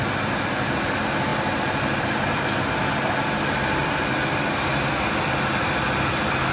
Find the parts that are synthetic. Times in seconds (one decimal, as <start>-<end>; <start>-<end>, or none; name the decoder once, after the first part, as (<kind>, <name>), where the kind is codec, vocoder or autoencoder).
none